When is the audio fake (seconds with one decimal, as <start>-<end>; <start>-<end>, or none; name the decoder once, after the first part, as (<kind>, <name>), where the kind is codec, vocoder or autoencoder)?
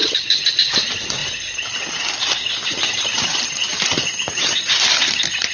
none